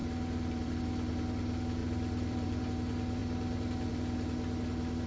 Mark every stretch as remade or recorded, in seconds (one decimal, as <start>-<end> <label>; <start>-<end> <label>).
0.0-0.8 remade; 0.8-1.8 recorded; 1.8-2.6 remade; 2.6-5.1 recorded